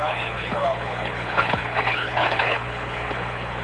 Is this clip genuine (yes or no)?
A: no